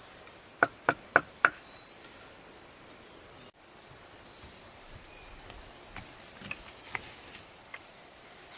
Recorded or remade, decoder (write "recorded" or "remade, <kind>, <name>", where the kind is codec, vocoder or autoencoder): remade, vocoder, BigVGAN v2